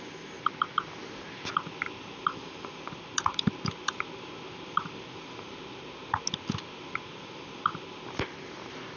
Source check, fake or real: real